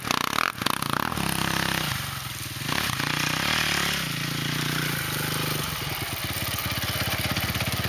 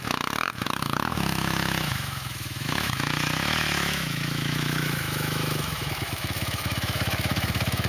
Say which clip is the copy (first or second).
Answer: second